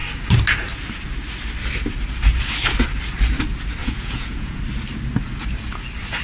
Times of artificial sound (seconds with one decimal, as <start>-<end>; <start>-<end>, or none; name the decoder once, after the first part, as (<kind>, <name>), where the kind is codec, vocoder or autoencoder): 3.8-4.6 (vocoder, Vocos)